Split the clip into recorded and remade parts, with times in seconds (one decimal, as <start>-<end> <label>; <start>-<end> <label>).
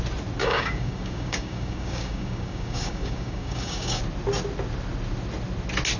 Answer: 0.0-0.4 recorded; 0.4-4.0 remade; 4.0-6.0 recorded